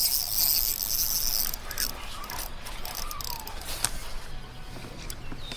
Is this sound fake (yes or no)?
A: no